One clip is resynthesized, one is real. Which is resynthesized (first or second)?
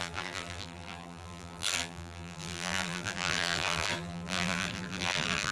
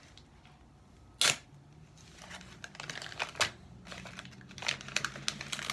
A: first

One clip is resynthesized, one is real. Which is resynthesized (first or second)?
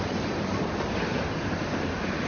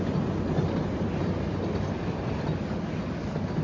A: first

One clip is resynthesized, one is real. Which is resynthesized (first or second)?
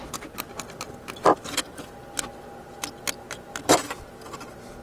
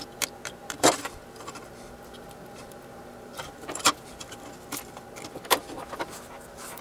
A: second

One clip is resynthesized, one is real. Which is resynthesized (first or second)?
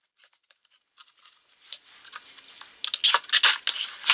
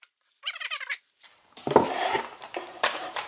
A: second